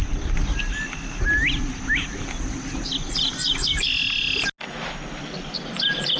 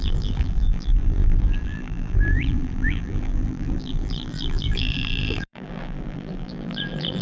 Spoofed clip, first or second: second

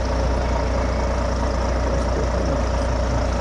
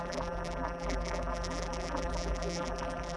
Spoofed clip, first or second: second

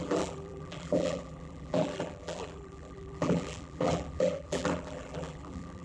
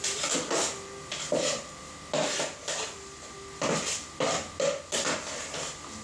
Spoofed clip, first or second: first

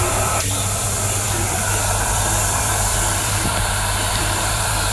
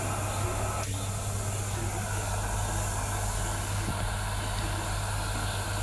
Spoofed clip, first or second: first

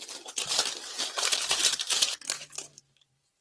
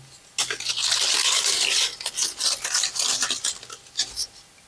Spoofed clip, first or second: first